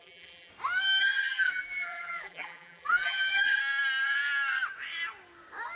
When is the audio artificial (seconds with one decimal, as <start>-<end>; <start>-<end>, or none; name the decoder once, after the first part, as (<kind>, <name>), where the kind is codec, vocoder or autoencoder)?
0.0-0.5 (vocoder, BigVGAN v2); 1.0-3.6